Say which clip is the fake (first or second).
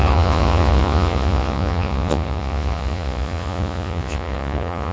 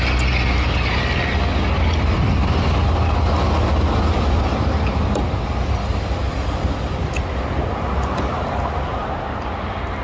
first